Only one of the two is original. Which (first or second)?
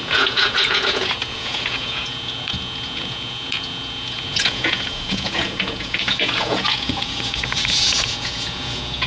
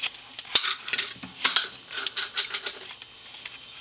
second